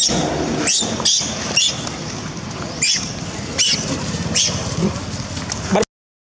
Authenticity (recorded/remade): recorded